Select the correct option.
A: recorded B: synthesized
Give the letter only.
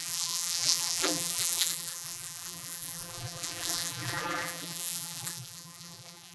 B